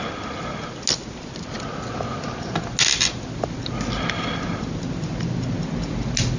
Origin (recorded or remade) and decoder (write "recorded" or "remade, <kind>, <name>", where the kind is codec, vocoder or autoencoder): recorded